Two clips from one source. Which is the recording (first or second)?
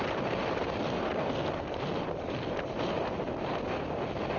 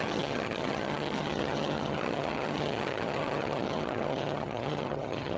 first